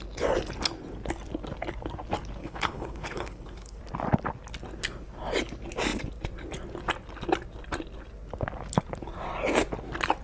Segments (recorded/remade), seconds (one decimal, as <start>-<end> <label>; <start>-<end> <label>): 0.0-2.4 recorded; 2.4-3.8 remade; 3.8-10.2 recorded